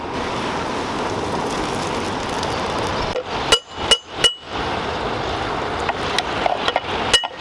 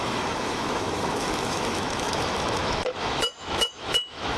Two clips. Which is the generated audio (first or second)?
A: second